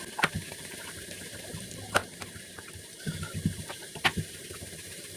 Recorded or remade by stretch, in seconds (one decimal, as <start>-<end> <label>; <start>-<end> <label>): 0.0-2.0 remade; 2.0-3.0 recorded; 3.0-5.2 remade